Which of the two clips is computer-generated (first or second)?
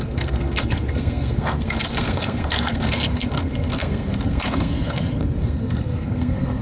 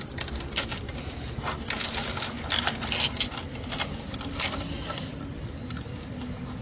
first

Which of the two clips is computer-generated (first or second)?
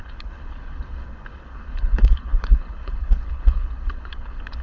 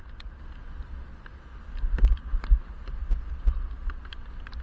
first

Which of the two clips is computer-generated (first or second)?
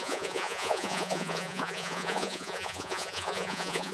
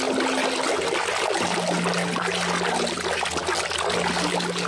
first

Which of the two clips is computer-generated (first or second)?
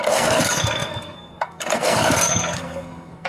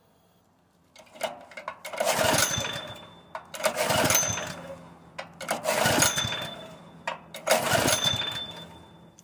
first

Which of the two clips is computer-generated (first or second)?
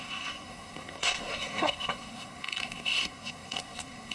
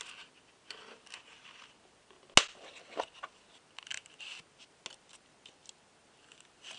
first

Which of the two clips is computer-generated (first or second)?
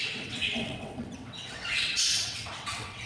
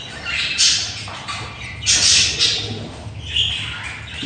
first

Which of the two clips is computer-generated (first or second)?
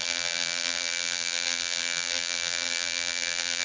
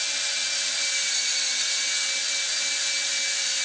first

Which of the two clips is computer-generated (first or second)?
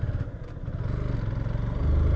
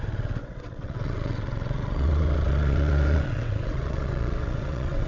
second